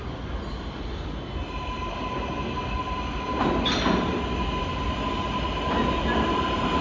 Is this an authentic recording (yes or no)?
yes